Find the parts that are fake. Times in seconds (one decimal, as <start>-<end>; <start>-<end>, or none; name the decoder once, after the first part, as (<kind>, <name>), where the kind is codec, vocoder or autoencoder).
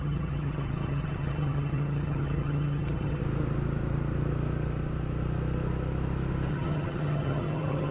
0.0-3.2 (vocoder, HiFi-GAN); 6.5-7.9